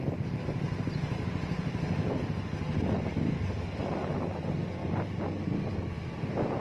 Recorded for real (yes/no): yes